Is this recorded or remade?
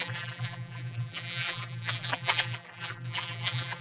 remade